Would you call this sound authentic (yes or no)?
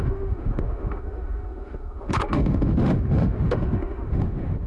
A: no